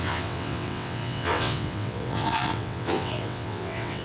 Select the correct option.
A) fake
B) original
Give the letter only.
A